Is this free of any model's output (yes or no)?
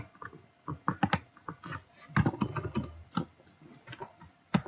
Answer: yes